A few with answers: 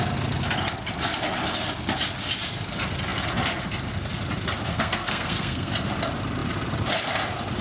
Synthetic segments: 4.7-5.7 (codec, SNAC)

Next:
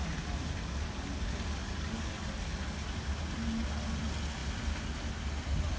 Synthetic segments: 1.6-2.1 (codec, DAC)

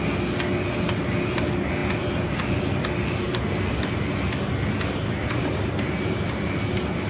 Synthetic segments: none

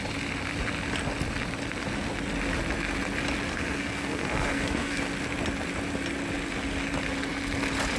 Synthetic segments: 3.5-5.0 (codec, SNAC)

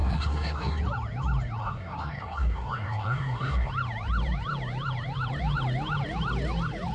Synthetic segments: 0.0-0.8 (codec, SNAC); 1.6-3.7

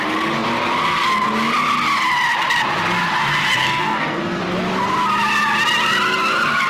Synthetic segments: 3.6-4.4 (codec, SNAC)

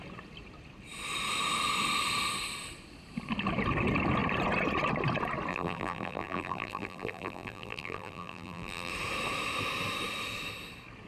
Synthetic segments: 5.5-8.9 (vocoder, BigVGAN v2)